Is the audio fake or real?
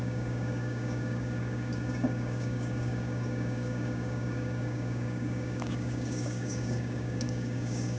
fake